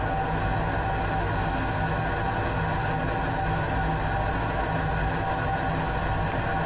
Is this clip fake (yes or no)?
no